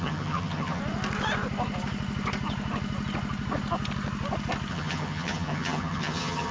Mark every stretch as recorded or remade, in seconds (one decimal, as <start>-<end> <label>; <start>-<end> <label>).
0.0-0.8 remade; 0.8-4.7 recorded; 4.7-6.5 remade